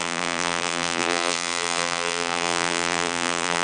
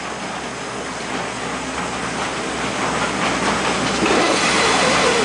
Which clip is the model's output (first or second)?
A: first